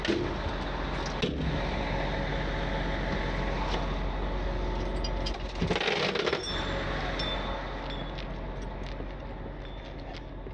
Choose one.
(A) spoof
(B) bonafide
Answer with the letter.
B